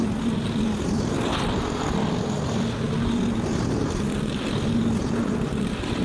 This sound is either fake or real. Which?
real